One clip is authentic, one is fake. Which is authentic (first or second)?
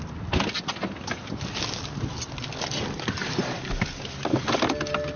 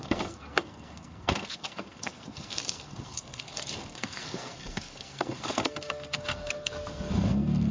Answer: first